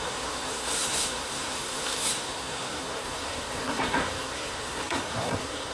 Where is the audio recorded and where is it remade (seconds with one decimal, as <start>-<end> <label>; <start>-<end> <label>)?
0.0-5.7 remade